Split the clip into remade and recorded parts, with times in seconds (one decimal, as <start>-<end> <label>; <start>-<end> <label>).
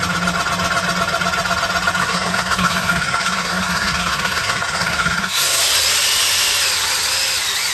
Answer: 0.0-2.0 recorded; 2.0-5.6 remade; 5.6-7.7 recorded